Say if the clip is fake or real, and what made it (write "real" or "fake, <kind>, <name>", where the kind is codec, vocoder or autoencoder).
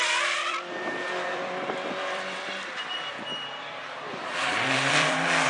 fake, vocoder, BigVGAN v2